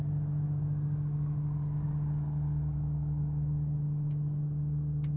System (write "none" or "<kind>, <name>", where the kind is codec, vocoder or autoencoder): none